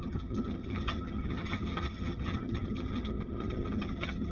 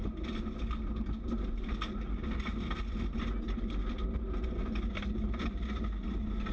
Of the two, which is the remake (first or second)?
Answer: first